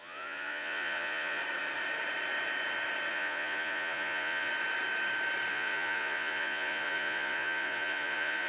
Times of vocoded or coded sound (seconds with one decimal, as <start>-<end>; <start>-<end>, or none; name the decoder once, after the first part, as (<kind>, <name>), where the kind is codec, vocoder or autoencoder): 0.0-1.4 (vocoder, Vocos); 3.1-4.5; 5.5-8.5